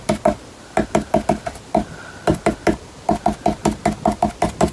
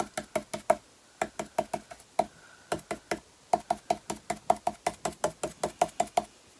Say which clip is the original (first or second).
second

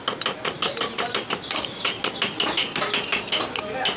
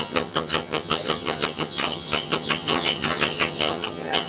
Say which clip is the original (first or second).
first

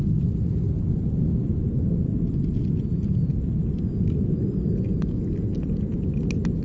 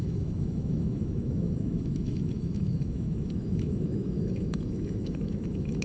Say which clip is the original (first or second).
first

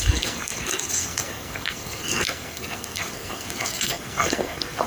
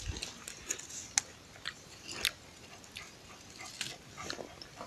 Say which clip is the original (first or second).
second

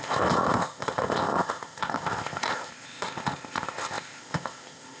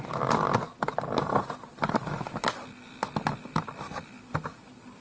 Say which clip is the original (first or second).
second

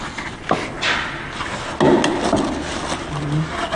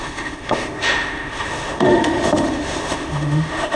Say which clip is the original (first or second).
first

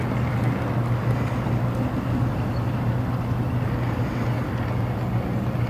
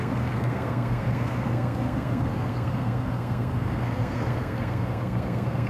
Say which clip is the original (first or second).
first